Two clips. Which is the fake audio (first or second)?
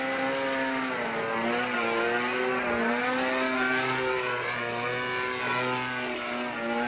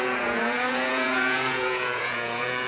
second